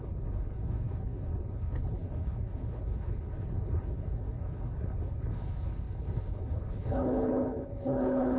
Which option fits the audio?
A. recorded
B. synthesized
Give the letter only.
B